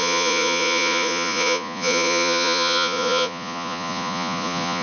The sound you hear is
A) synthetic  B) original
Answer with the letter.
A